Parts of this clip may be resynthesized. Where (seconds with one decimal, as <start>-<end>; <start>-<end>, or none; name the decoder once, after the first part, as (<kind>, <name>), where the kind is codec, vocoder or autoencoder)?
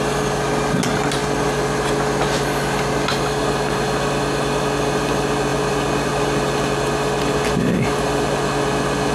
none